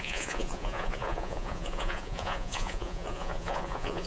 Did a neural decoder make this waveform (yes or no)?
yes